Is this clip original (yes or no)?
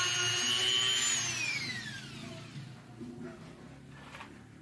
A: yes